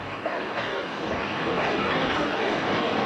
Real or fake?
fake